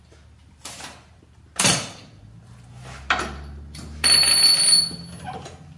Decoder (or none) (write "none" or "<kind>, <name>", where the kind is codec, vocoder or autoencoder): none